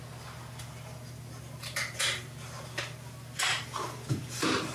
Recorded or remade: recorded